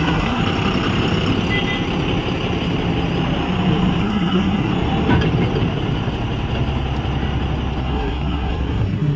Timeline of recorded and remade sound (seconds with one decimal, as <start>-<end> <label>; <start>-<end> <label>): 0.0-0.4 remade; 0.4-4.0 recorded; 4.0-4.7 remade; 4.7-7.8 recorded; 7.8-9.2 remade